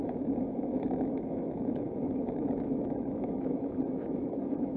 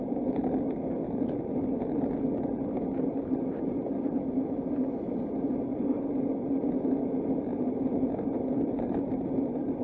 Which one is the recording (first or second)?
second